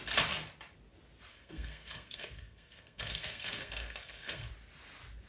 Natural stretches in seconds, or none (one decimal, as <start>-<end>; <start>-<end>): 0.0-1.3; 4.5-5.3